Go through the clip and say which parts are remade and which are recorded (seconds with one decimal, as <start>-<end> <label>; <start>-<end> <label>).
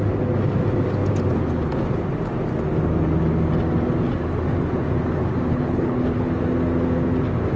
0.0-5.5 recorded; 5.5-6.4 remade; 6.4-7.6 recorded